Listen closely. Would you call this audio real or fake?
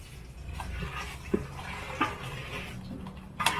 real